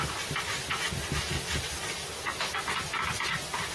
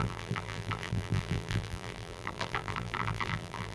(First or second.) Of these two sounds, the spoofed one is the second